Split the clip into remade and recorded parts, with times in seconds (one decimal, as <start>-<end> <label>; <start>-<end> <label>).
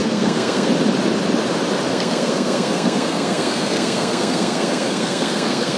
0.0-0.7 remade; 0.7-1.9 recorded; 1.9-5.8 remade